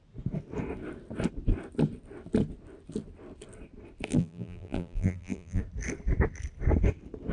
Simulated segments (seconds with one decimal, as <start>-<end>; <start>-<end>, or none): 4.1-5.6